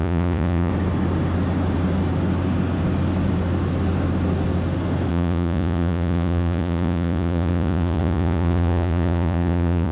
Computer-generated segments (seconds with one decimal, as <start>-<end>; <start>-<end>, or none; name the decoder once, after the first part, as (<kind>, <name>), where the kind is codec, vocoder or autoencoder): 0.0-0.7 (vocoder, Vocos); 5.1-9.9